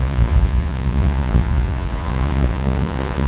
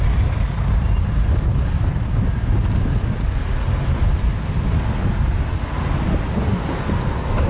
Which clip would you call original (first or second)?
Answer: second